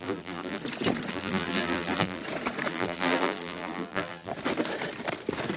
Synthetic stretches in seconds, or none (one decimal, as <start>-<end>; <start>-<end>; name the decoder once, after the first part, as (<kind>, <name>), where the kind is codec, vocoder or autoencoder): 0.0-0.6 (vocoder, BigVGAN v2); 1.1-2.2; 2.7-4.3